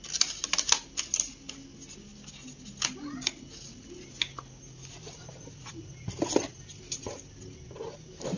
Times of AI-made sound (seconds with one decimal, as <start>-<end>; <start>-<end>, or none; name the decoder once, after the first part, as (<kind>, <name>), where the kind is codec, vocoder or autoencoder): none